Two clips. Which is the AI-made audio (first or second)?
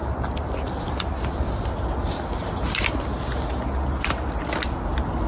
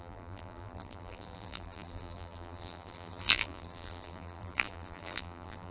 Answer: second